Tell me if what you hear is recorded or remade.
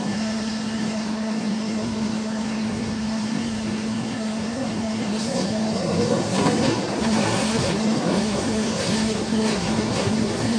remade